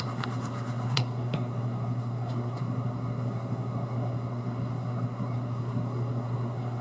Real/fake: fake